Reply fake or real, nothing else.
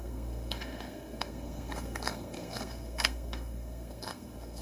fake